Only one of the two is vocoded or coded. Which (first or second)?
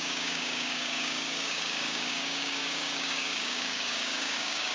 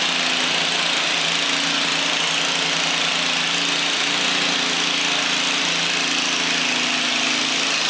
first